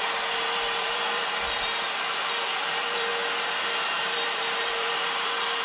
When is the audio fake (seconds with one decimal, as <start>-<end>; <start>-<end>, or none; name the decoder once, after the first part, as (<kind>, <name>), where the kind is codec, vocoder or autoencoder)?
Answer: 0.0-3.1 (vocoder, BigVGAN v2); 3.9-5.6